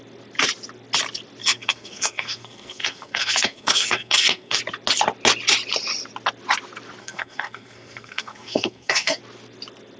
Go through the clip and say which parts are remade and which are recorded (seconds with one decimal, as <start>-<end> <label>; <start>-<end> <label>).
0.0-1.4 recorded; 1.4-4.6 remade; 4.6-7.0 recorded; 7.0-9.2 remade; 9.2-10.0 recorded